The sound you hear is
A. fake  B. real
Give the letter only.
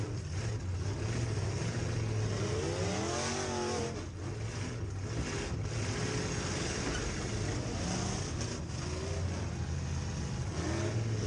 B